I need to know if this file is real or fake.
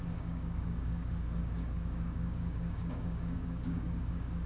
fake